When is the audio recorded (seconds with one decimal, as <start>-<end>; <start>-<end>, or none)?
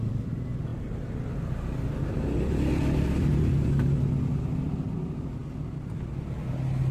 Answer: 0.0-6.9